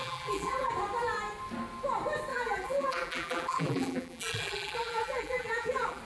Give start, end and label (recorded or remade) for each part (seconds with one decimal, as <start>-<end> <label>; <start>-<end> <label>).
0.0-0.7 remade; 0.7-2.3 recorded; 2.3-6.0 remade